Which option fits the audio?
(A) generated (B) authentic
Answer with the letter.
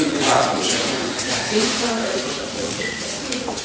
A